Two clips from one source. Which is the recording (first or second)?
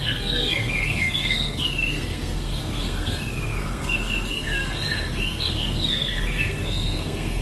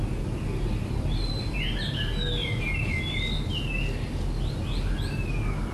second